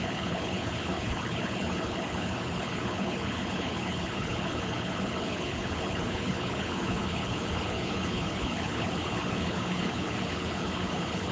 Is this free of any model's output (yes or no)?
no